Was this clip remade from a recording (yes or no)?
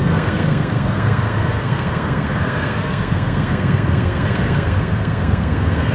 yes